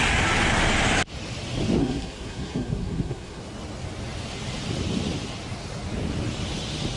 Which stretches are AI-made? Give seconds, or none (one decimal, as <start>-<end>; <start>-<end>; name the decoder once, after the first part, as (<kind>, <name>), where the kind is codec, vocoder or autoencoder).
1.8-3.4 (codec, SNAC)